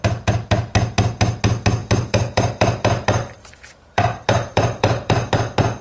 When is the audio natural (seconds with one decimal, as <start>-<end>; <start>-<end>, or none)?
0.0-1.8; 5.3-5.8